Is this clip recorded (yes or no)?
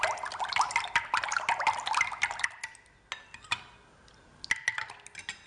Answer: yes